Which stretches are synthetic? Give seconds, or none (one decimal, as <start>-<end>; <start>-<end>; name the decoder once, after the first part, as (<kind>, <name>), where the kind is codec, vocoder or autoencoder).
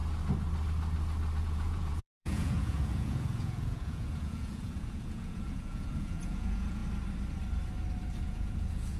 1.4-6.8 (vocoder, Vocos); 8.2-9.0